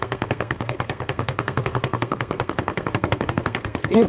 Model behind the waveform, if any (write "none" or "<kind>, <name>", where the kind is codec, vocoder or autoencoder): codec, SNAC